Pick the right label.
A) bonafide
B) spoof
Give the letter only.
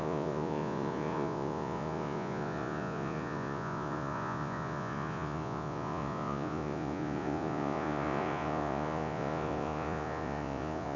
B